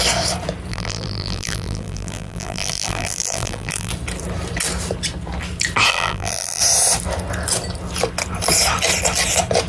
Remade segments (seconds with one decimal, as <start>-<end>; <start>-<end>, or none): 0.7-3.9; 5.9-6.6